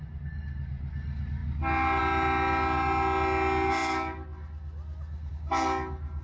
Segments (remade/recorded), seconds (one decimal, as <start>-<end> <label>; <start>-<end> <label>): 0.0-6.2 recorded